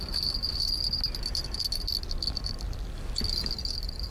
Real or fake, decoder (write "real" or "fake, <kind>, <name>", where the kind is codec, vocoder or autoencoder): real